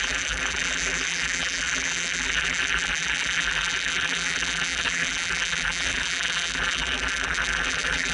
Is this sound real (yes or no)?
no